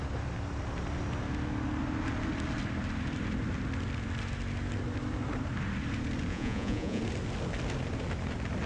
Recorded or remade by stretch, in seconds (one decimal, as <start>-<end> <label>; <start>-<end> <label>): 0.0-6.3 recorded; 6.3-7.0 remade; 7.0-8.7 recorded